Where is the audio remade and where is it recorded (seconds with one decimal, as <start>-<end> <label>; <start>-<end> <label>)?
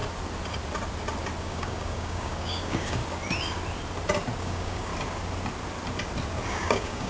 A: 0.0-1.4 recorded; 1.4-3.0 remade; 3.0-4.4 recorded; 4.4-4.9 remade; 4.9-6.5 recorded; 6.5-7.1 remade